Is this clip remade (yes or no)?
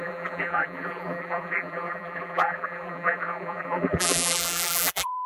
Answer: yes